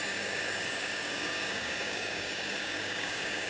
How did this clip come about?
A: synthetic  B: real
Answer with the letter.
A